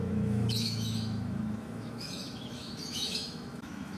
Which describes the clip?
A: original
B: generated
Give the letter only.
B